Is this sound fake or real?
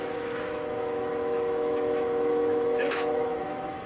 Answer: fake